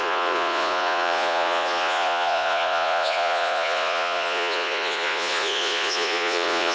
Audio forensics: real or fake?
fake